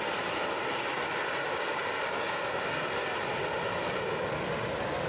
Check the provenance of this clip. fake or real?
real